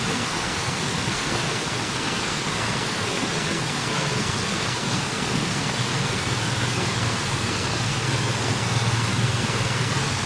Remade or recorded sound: remade